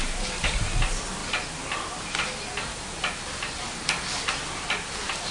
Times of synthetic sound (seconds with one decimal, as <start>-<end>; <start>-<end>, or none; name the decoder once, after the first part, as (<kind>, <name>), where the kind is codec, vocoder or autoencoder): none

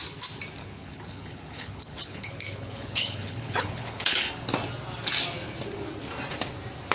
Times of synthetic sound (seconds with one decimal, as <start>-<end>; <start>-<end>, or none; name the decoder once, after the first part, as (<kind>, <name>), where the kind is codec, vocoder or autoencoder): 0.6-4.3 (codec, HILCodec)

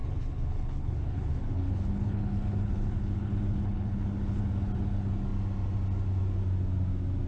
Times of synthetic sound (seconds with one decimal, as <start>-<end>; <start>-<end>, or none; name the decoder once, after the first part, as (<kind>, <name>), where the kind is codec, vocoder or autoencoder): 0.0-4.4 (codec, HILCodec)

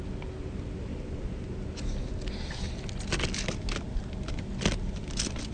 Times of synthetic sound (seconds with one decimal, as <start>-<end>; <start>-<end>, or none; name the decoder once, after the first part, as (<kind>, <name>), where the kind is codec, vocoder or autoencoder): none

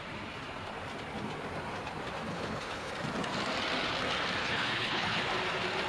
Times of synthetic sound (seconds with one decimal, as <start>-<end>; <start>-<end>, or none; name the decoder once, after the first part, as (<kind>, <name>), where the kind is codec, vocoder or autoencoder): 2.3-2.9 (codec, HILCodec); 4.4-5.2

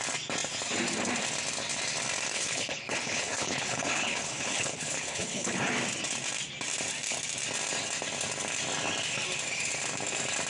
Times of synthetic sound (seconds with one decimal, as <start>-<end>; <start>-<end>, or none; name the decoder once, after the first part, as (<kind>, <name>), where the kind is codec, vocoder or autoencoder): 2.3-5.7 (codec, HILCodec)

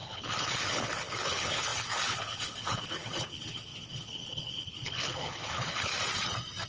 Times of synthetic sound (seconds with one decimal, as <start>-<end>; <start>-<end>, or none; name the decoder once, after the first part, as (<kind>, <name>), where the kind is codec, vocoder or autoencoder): 0.0-5.9 (codec, HILCodec)